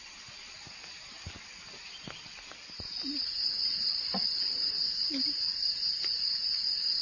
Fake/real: real